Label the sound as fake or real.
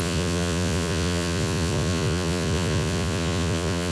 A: fake